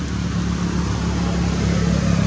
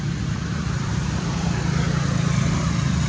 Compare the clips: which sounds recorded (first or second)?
first